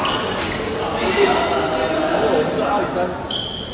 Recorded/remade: recorded